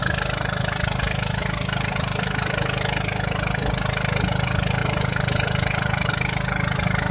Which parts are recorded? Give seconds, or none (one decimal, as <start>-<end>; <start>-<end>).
0.0-4.8; 6.1-7.1

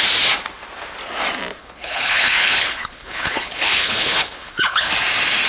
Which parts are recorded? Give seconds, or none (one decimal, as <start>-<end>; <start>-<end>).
0.0-1.6; 4.9-5.5

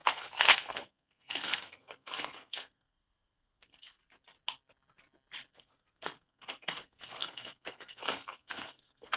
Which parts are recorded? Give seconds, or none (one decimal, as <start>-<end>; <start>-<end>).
4.0-5.5